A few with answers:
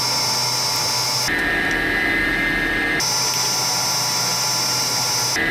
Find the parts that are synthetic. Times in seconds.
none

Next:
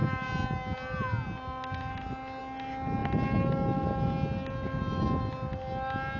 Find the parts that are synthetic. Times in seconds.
none